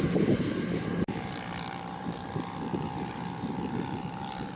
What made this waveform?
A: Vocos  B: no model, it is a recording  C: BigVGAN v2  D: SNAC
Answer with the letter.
C